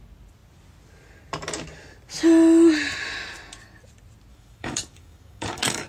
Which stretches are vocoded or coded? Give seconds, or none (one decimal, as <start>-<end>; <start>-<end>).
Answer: 4.3-5.9